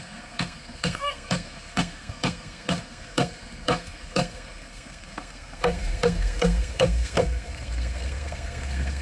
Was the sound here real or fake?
fake